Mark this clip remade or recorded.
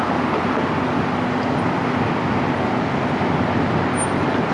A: recorded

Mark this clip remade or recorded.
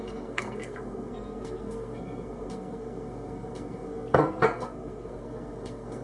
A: remade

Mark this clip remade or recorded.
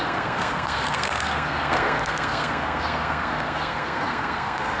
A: remade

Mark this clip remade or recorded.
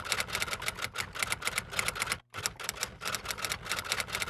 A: recorded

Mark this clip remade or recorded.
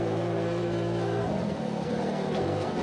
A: remade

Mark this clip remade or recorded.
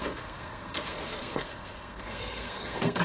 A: remade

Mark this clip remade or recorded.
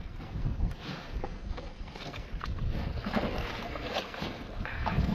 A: remade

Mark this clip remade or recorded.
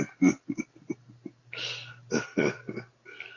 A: recorded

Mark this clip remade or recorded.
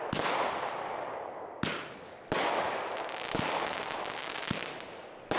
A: recorded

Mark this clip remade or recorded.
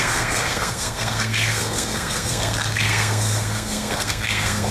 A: remade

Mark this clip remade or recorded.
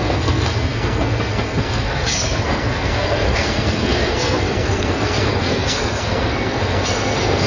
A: remade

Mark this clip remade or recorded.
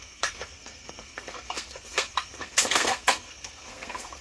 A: remade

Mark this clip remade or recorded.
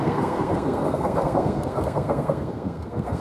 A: remade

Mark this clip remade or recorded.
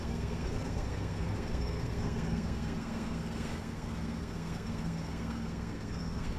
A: remade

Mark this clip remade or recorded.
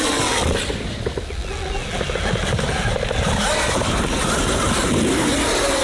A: recorded